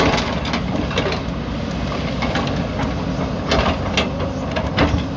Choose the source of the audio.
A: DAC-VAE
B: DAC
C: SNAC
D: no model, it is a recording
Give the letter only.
D